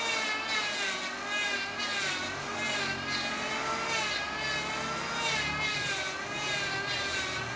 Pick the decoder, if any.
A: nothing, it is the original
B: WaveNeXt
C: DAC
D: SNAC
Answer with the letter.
A